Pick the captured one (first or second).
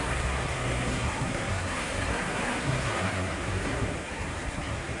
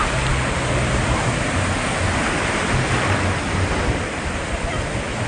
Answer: second